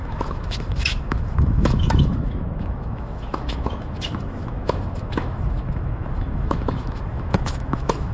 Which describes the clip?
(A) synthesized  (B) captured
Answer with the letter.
A